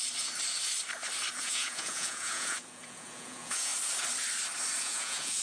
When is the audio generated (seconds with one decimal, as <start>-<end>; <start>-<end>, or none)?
1.3-3.7; 4.8-5.4